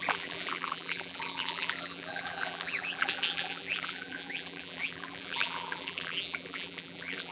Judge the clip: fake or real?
fake